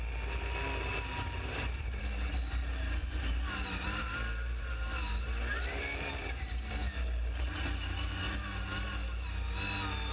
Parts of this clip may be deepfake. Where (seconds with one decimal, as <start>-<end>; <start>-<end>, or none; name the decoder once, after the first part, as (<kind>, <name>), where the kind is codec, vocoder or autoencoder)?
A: 1.1-2.0 (vocoder, BigVGAN v2); 3.0-6.7